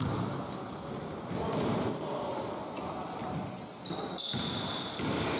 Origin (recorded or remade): recorded